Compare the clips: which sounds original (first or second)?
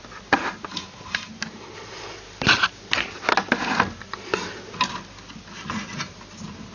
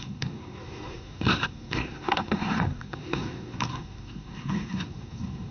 first